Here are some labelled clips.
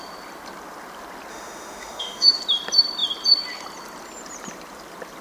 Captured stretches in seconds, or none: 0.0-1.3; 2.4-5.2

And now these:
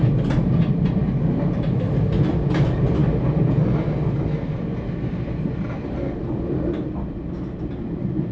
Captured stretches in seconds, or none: 0.0-8.3

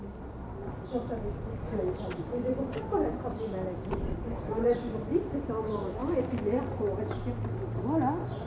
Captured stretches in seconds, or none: 0.0-8.5

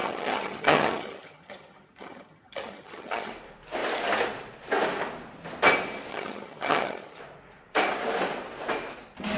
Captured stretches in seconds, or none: 3.3-6.1; 7.2-9.4